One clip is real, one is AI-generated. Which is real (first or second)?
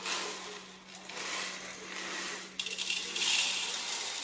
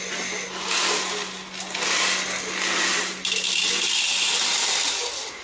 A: second